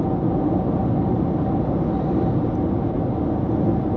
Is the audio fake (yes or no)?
no